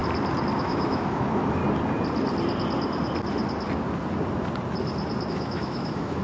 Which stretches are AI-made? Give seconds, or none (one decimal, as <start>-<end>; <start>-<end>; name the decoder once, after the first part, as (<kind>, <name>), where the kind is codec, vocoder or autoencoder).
0.6-1.6 (autoencoder, DAC-VAE); 5.3-6.2

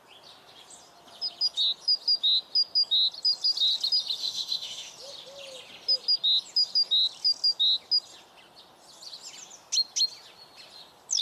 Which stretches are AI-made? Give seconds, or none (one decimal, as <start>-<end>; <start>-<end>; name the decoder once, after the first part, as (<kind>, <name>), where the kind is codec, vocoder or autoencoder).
4.2-4.9 (autoencoder, DAC-VAE)